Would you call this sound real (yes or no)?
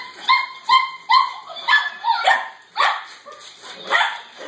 yes